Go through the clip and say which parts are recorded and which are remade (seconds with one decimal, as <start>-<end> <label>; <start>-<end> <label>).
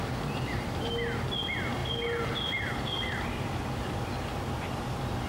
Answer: 0.0-1.8 recorded; 1.8-4.0 remade; 4.0-5.3 recorded